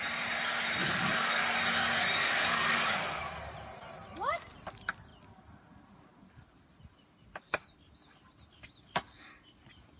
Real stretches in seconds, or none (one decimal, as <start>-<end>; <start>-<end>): 0.0-0.8; 1.4-2.2; 3.2-10.0